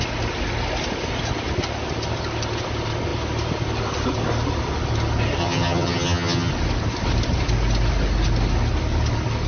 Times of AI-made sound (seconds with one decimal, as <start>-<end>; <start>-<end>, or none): 5.4-6.5